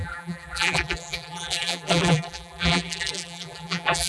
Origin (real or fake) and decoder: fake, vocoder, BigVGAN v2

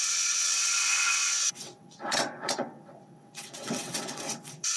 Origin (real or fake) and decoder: fake, vocoder, WaveNeXt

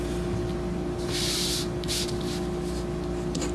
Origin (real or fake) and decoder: real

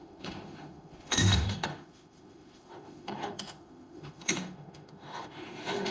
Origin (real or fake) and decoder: fake, autoencoder, DAC-VAE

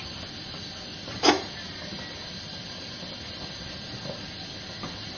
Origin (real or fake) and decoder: real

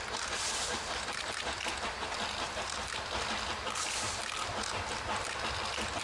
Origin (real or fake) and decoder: real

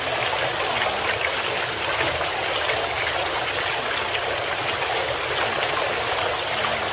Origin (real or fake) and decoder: real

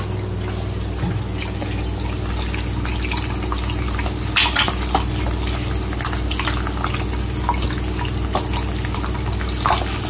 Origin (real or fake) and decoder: real